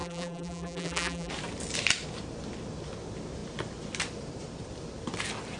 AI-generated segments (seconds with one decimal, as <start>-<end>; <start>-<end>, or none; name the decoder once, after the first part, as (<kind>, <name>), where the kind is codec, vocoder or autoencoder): 0.0-1.3 (vocoder, BigVGAN v2)